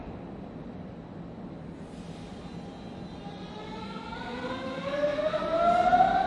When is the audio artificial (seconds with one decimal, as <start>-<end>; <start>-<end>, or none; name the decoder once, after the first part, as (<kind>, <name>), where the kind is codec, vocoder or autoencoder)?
3.8-5.4 (codec, SNAC)